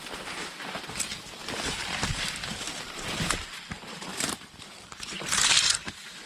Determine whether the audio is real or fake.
fake